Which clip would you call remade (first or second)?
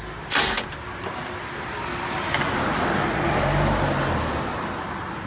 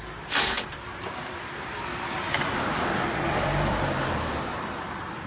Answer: second